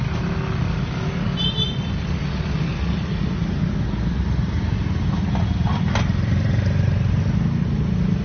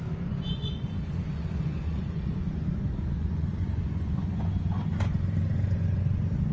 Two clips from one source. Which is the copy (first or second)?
second